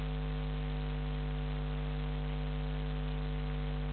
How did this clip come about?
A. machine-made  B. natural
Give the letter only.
B